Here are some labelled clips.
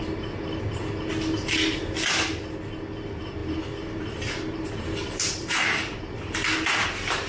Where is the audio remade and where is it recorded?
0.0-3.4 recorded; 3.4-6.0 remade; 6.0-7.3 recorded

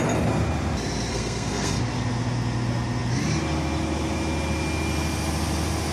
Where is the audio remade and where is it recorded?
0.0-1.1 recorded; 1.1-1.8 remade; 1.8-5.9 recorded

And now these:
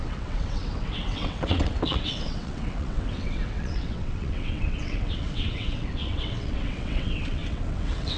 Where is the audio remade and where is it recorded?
0.0-8.2 remade

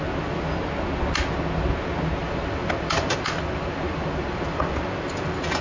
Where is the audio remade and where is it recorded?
0.0-2.2 recorded; 2.2-5.6 remade

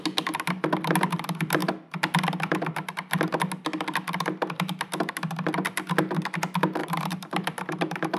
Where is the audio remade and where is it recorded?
0.0-6.8 recorded; 6.8-8.2 remade

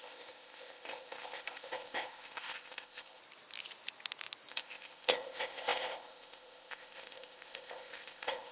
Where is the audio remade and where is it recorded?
0.0-3.2 remade; 3.2-4.5 recorded; 4.5-8.5 remade